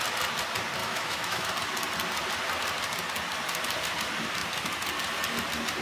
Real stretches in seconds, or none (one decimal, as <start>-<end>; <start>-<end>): 0.0-0.8; 1.5-5.8